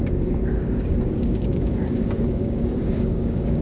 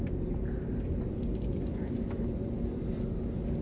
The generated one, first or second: first